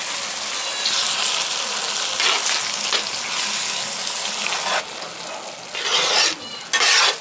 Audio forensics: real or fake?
real